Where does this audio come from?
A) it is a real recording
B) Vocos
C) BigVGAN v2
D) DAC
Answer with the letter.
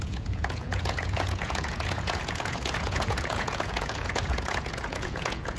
B